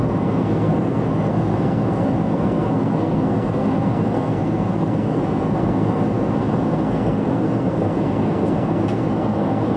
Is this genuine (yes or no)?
no